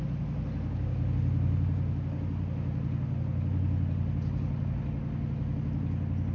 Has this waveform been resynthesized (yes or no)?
no